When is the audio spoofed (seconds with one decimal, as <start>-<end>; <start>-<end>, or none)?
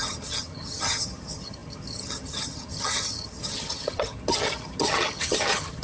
0.0-5.8